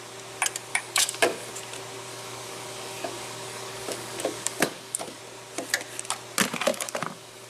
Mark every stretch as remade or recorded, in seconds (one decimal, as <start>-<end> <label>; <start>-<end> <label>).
0.0-0.7 recorded; 0.7-1.5 remade; 1.5-2.1 recorded; 2.1-5.2 remade; 5.2-6.7 recorded; 6.7-7.5 remade